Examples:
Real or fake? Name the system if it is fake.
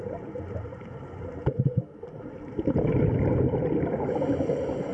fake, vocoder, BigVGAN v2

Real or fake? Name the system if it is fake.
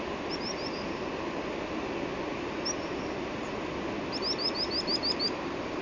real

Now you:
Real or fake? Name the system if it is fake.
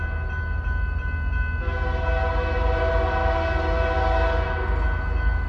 real